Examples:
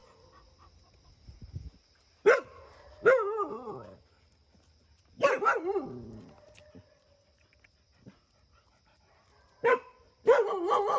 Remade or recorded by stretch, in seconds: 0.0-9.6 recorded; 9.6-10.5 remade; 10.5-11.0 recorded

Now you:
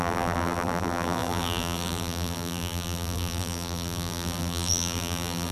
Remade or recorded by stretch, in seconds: 0.0-5.5 remade